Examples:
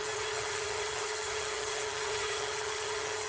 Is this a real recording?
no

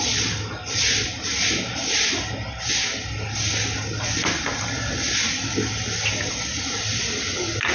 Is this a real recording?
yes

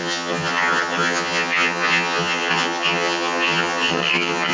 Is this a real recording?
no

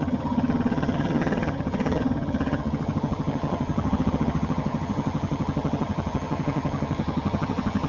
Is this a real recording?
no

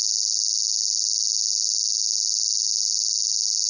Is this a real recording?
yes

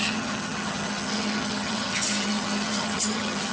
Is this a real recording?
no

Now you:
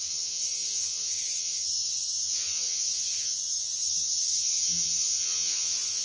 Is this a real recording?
no